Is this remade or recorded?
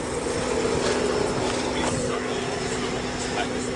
recorded